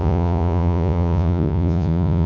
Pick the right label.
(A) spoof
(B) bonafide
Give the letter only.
A